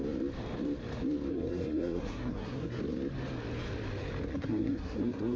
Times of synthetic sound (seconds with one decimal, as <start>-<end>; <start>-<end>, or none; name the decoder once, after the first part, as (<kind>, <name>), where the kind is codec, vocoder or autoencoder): 1.3-2.8 (codec, SNAC); 4.3-5.4